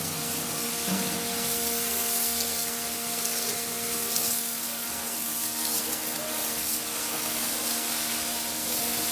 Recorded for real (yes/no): no